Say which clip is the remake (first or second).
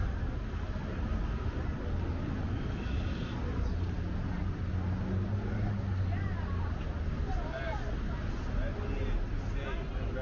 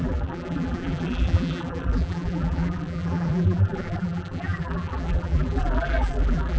second